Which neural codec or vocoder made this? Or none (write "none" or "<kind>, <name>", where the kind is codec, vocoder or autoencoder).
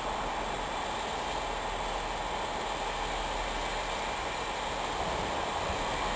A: none